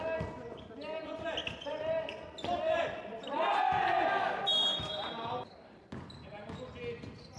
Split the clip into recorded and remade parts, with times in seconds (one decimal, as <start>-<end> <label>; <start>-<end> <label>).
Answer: 0.0-7.4 recorded